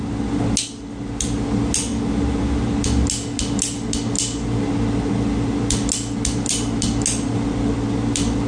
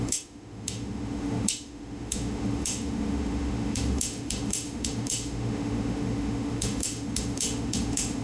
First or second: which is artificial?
second